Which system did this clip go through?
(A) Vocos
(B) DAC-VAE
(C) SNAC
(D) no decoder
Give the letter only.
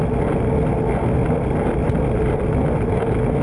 D